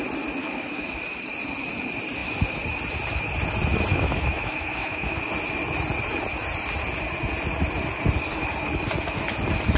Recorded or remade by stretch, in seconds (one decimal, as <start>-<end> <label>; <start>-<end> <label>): 0.0-0.4 recorded; 0.4-1.0 remade; 1.0-3.9 recorded; 3.9-5.2 remade; 5.2-9.8 recorded